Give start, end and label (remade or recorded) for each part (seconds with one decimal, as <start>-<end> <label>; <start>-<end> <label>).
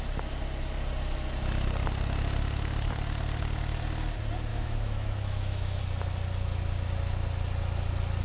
0.0-4.5 recorded; 4.5-5.8 remade; 5.8-8.2 recorded